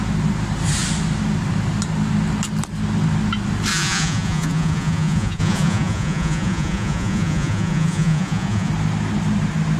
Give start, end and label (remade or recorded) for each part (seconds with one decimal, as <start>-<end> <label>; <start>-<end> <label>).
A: 0.0-3.7 recorded; 3.7-8.7 remade; 8.7-9.8 recorded